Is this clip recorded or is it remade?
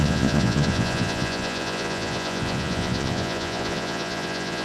remade